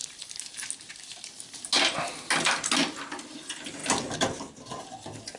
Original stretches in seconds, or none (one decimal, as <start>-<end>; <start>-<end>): 0.0-5.4